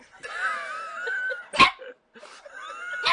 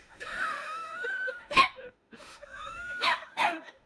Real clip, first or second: first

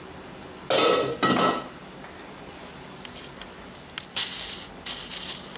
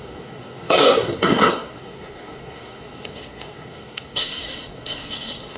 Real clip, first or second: first